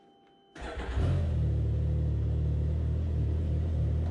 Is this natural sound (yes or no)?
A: yes